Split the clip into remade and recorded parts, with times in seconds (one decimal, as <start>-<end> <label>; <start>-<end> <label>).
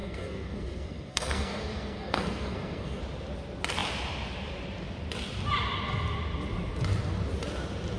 0.0-3.0 remade; 3.0-8.0 recorded